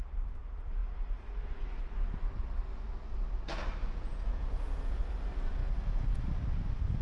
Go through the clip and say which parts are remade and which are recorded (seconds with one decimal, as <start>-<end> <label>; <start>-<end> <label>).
0.0-3.8 recorded; 3.8-5.0 remade; 5.0-7.0 recorded